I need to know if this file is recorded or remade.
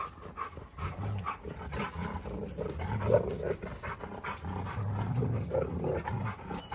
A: recorded